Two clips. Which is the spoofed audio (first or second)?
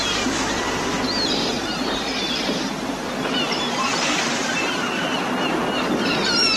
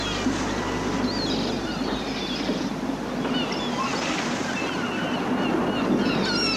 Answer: first